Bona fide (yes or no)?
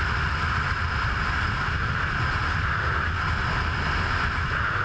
yes